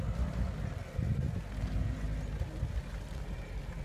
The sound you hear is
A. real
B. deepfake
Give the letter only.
A